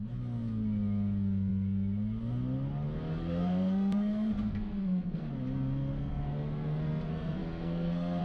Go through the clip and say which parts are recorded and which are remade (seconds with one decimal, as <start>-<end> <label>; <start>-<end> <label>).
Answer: 0.0-3.1 recorded; 3.1-5.3 remade; 5.3-5.9 recorded; 5.9-8.2 remade